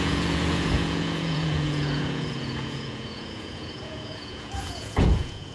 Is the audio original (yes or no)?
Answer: no